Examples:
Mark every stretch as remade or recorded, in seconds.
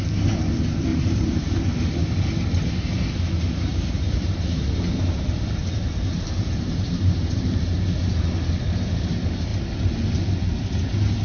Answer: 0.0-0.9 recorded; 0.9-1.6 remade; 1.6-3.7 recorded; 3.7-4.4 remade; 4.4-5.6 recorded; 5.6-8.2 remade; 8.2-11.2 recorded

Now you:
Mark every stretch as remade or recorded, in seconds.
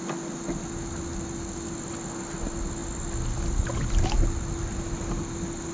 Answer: 0.0-5.7 recorded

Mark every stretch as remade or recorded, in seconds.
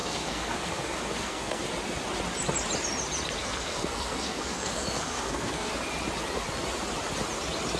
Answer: 0.0-1.6 remade; 1.6-3.4 recorded; 3.4-5.7 remade; 5.7-7.8 recorded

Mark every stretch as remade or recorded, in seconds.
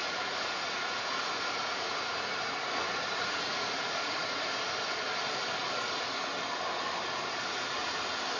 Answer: 0.0-4.4 remade; 4.4-8.4 recorded